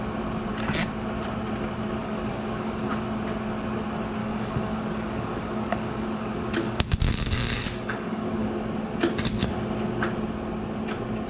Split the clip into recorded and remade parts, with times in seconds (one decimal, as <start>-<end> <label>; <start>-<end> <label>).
0.0-2.0 recorded; 2.0-2.9 remade; 2.9-4.2 recorded; 4.2-8.5 remade; 8.5-11.3 recorded